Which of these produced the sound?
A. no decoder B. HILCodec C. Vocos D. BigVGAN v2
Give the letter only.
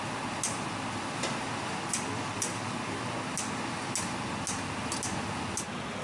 A